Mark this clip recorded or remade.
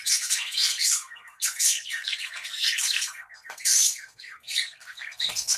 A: remade